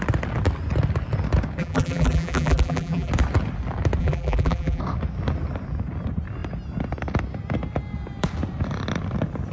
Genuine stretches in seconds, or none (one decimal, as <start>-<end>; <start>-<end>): 0.0-1.6; 3.1-4.0; 4.8-9.5